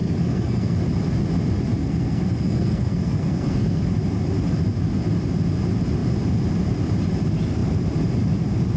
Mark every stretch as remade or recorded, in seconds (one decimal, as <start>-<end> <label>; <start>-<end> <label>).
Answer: 0.0-0.8 remade; 0.8-1.8 recorded; 1.8-3.8 remade; 3.8-8.8 recorded